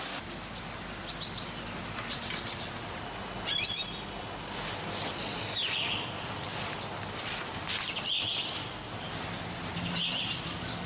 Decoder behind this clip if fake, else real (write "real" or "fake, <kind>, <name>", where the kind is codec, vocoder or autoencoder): real